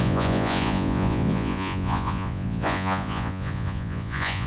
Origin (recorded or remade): remade